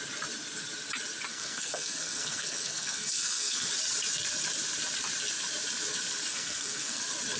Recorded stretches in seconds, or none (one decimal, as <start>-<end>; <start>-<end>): 0.0-1.3; 3.7-6.3; 7.0-7.4